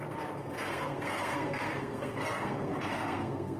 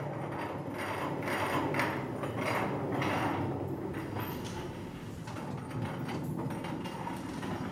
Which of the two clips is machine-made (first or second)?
first